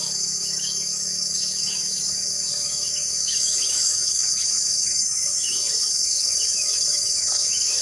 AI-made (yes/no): yes